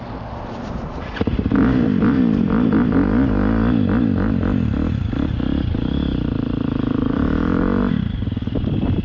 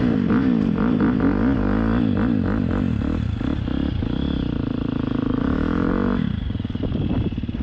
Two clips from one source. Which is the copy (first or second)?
first